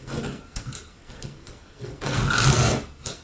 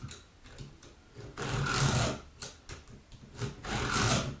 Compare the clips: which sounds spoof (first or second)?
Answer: first